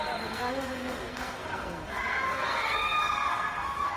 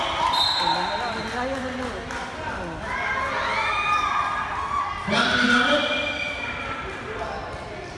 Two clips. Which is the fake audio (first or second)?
first